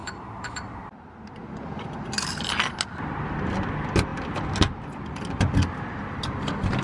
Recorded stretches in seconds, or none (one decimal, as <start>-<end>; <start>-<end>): 0.8-6.8